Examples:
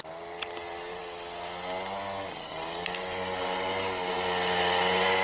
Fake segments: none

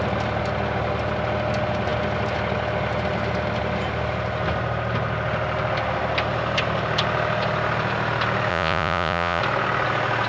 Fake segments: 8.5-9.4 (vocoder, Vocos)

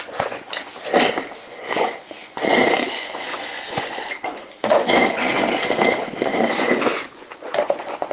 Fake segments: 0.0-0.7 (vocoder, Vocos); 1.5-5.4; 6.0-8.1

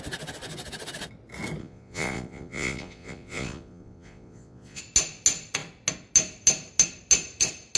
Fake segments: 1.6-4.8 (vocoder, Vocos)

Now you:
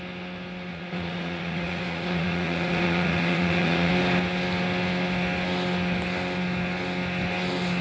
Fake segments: 0.7-3.9 (vocoder, Vocos)

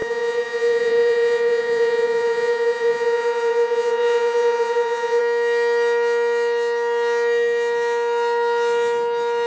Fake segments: 0.0-5.2 (vocoder, Vocos)

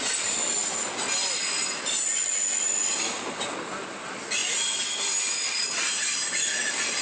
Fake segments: none

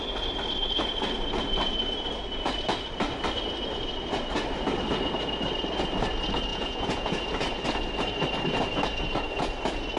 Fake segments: 6.5-7.2 (vocoder, Vocos)